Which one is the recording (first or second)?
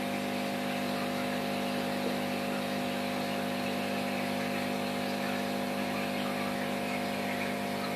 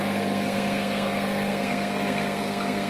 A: first